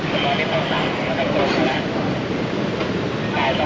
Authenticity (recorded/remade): recorded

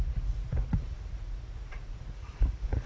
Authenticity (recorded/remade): remade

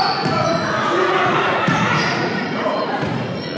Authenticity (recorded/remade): remade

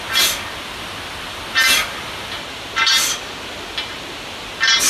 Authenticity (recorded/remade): recorded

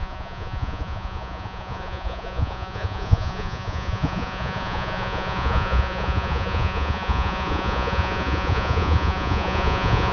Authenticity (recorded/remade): remade